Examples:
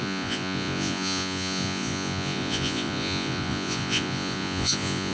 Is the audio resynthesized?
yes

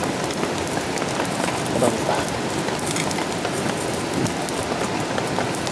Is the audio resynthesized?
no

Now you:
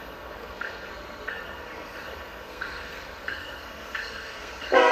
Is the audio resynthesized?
yes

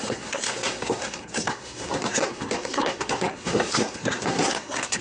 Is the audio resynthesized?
yes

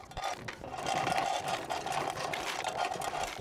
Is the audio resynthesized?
no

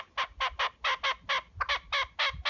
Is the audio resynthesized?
no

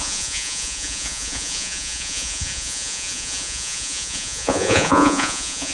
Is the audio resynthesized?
yes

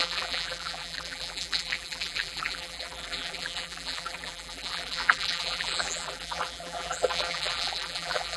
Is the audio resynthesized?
yes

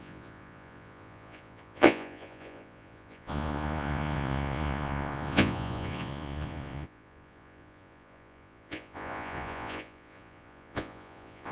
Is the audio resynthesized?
yes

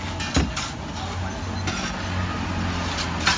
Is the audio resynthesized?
no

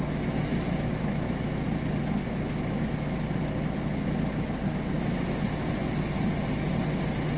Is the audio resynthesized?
no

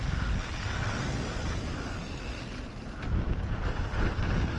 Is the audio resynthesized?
no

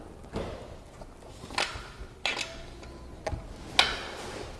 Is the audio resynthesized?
no